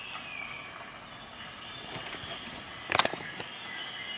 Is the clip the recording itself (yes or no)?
yes